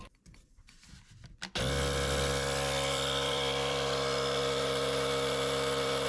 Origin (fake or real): fake